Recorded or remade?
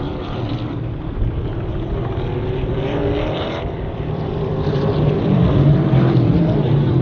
remade